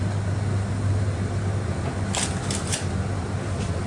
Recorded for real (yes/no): yes